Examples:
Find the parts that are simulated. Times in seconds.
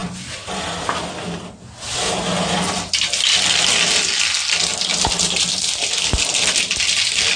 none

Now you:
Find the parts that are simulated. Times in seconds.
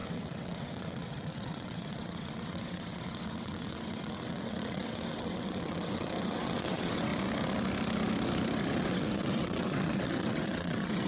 0.0-7.1 (vocoder, WaveNeXt); 8.8-11.1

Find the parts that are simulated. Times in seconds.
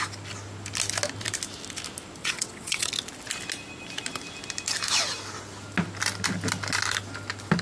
2.2-2.9 (vocoder, WaveNeXt)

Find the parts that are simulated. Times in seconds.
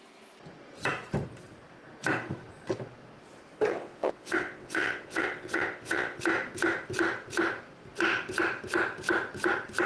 3.7-6.2 (vocoder, WaveNeXt)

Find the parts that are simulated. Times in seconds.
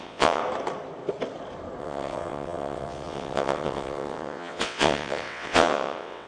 0.0-0.4 (vocoder, WaveNeXt); 1.8-6.3